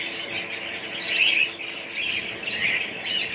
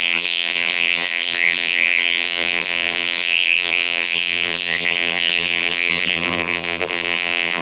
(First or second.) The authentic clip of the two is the first